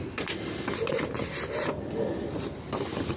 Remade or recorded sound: recorded